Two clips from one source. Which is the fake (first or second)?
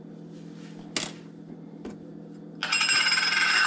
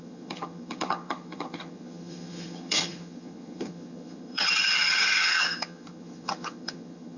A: second